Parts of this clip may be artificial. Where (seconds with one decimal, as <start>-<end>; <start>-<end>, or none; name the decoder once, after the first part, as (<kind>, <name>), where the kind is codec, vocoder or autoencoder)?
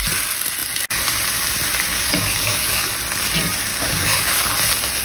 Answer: 1.9-2.9 (codec, DAC); 3.7-4.5